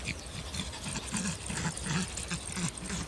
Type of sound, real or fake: real